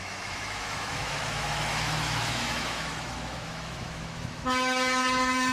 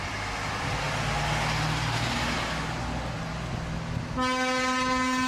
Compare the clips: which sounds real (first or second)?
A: second